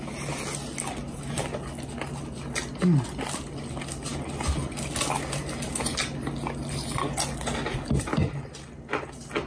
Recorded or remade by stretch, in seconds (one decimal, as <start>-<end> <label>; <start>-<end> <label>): 0.0-9.5 recorded